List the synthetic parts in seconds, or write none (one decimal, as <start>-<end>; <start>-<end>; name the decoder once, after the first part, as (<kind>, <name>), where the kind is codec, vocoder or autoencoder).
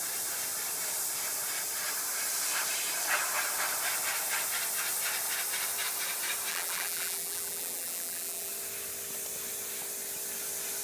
6.5-8.5 (vocoder, BigVGAN v2)